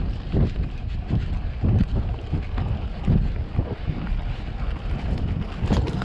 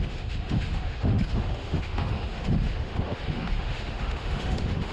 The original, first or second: first